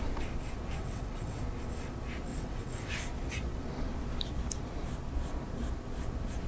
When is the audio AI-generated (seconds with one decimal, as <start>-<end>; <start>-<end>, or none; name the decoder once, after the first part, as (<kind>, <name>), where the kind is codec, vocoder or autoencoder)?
0.8-1.4 (vocoder, WaveNeXt); 2.3-2.9